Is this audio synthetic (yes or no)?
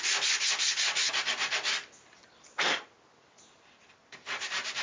no